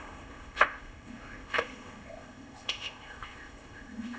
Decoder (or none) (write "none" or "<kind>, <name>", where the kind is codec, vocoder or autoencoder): codec, ZipCodec